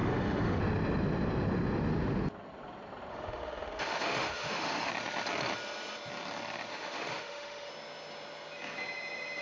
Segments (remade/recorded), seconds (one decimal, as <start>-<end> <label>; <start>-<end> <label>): 0.0-0.6 remade; 0.6-3.1 recorded; 3.1-4.9 remade; 4.9-6.7 recorded; 6.7-7.7 remade; 7.7-9.4 recorded